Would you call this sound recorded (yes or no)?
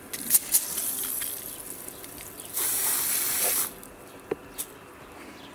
yes